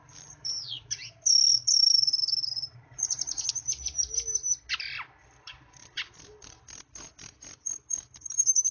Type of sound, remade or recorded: remade